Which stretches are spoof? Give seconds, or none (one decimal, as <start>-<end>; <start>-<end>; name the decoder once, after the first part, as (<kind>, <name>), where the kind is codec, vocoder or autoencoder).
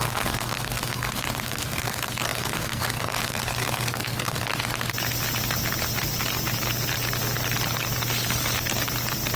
0.0-4.5 (codec, SNAC)